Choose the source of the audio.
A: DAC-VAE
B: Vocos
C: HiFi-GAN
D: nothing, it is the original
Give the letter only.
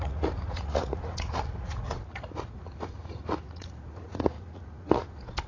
B